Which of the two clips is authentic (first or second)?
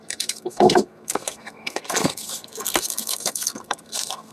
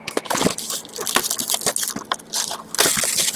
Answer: second